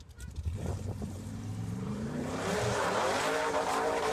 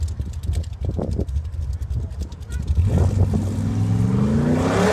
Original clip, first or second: second